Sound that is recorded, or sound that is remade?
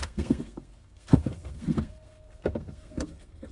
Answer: remade